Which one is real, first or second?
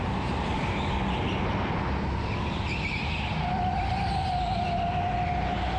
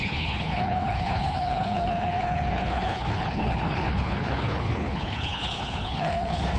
first